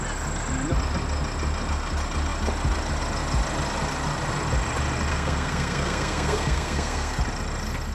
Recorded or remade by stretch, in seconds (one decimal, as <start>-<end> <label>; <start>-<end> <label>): 0.0-5.1 recorded; 5.1-7.2 remade; 7.2-7.9 recorded